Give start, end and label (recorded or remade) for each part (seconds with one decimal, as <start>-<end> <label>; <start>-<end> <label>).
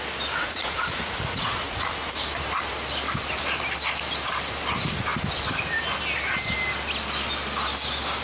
0.0-0.4 recorded; 0.4-2.3 remade; 2.3-8.2 recorded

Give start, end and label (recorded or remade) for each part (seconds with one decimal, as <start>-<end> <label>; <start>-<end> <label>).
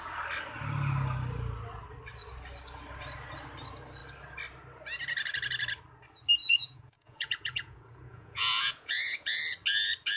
0.0-6.4 recorded; 6.4-9.4 remade; 9.4-10.2 recorded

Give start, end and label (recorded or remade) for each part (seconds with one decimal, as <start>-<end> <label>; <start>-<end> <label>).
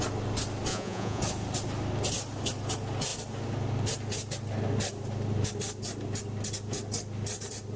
0.0-0.7 recorded; 0.7-1.2 remade; 1.2-7.8 recorded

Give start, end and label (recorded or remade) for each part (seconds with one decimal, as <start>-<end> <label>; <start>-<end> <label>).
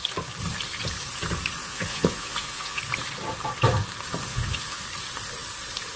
0.0-1.6 recorded; 1.6-2.8 remade; 2.8-4.3 recorded; 4.3-4.8 remade; 4.8-6.0 recorded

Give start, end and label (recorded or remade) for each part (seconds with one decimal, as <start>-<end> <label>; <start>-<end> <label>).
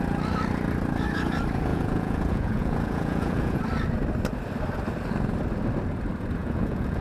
0.0-1.7 recorded; 1.7-3.6 remade; 3.6-6.4 recorded; 6.4-7.0 remade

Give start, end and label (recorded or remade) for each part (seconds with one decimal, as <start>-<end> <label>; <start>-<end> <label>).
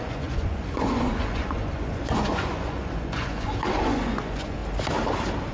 0.0-4.6 remade; 4.6-5.5 recorded